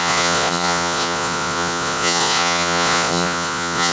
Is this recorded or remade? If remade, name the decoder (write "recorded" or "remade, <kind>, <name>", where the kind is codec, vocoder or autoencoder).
remade, vocoder, Vocos